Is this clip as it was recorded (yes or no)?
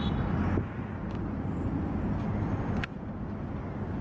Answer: yes